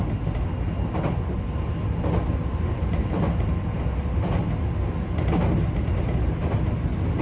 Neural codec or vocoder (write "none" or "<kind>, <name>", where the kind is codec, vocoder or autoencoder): none